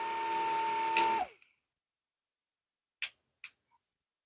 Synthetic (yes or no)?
no